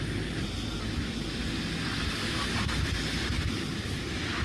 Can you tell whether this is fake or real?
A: real